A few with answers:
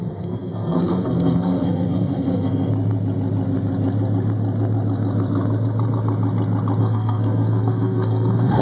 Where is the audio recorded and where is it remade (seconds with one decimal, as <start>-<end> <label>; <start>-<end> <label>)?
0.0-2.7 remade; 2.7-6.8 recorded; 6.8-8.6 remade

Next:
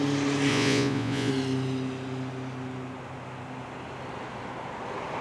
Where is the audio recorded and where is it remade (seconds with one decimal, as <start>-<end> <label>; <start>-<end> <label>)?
0.0-0.5 recorded; 0.5-1.3 remade; 1.3-5.2 recorded

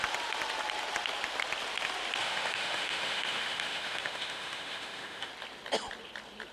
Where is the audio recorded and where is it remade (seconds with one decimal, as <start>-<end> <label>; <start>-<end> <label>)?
0.0-2.2 recorded; 2.2-5.3 remade; 5.3-6.5 recorded

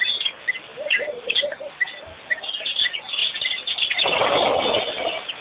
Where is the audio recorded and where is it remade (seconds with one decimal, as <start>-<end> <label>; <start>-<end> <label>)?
0.0-5.4 recorded

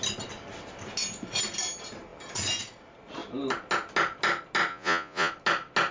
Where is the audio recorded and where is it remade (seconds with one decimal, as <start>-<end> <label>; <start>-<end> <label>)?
0.0-4.7 recorded; 4.7-5.3 remade; 5.3-5.9 recorded

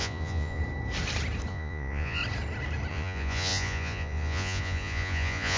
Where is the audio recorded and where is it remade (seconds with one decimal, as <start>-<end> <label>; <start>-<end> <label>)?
0.0-0.6 remade; 0.6-1.5 recorded; 1.5-2.2 remade; 2.2-2.9 recorded; 2.9-5.6 remade